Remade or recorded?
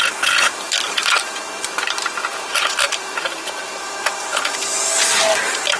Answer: recorded